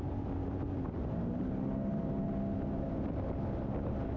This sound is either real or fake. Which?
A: real